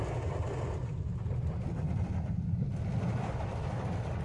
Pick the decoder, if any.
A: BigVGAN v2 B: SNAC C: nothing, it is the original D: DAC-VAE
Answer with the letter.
C